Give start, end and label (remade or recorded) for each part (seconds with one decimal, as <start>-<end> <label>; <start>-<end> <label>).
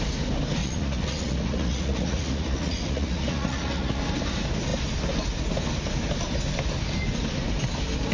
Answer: 0.0-0.6 recorded; 0.6-4.0 remade; 4.0-8.1 recorded